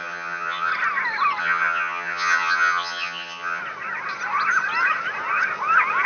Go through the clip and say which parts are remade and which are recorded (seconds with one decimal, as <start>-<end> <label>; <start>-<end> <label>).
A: 0.0-0.7 remade; 0.7-1.4 recorded; 1.4-3.6 remade; 3.6-6.1 recorded